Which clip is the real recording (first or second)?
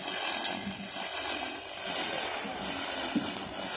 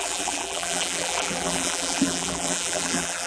first